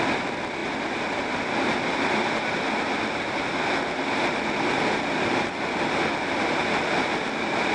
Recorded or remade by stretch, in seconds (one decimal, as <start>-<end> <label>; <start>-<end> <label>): 0.0-7.7 recorded